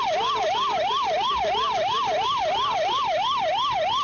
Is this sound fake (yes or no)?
no